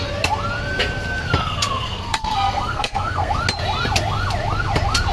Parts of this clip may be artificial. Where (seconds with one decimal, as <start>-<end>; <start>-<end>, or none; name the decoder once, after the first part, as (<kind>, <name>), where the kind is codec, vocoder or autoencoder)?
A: 1.4-3.3 (codec, SNAC)